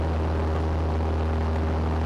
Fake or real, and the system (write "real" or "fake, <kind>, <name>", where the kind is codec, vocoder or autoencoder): real